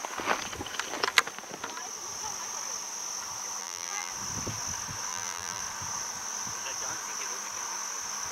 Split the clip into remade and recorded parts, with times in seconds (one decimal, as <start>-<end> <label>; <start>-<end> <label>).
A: 0.0-3.6 recorded; 3.6-4.1 remade; 4.1-5.1 recorded; 5.1-5.6 remade; 5.6-8.3 recorded

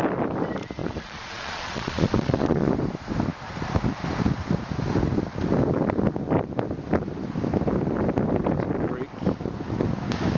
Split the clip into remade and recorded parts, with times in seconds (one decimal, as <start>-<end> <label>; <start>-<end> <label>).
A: 0.0-0.8 recorded; 0.8-2.7 remade; 2.7-10.4 recorded

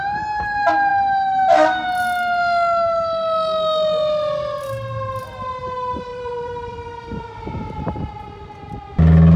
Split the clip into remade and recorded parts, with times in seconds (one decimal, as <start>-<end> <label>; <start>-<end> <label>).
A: 0.0-6.1 recorded; 6.1-8.2 remade; 8.2-9.4 recorded